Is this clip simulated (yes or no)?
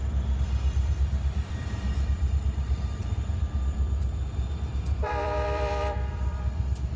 yes